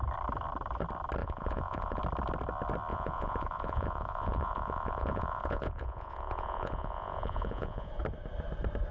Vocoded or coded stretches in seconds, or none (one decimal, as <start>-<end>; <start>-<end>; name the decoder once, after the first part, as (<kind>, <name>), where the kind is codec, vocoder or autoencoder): 1.2-2.0 (vocoder, Vocos); 2.9-7.9